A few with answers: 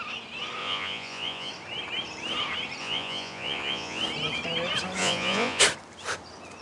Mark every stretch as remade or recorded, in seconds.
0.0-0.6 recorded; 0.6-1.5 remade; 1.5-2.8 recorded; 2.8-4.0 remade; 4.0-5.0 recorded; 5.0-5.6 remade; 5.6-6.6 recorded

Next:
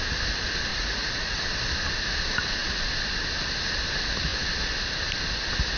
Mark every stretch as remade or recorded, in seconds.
0.0-0.7 recorded; 0.7-1.4 remade; 1.4-5.8 recorded

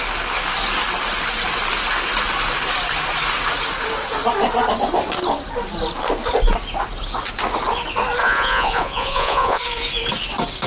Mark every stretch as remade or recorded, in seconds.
0.0-8.2 recorded; 8.2-9.6 remade; 9.6-10.7 recorded

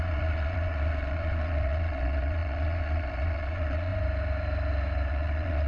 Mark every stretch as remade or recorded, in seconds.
0.0-3.9 remade; 3.9-5.1 recorded; 5.1-5.7 remade

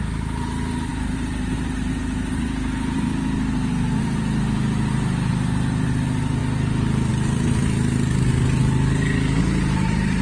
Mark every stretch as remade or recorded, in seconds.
0.0-10.2 recorded